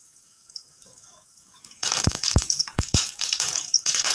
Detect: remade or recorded remade